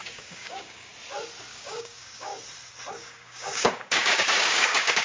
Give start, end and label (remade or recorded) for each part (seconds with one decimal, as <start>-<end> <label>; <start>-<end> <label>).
0.0-0.9 remade; 0.9-1.5 recorded; 1.5-2.3 remade; 2.3-2.9 recorded; 2.9-5.0 remade